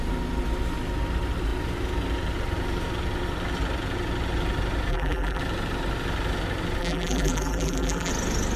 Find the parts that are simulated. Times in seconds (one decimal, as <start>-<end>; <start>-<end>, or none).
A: 4.9-5.4; 6.8-8.1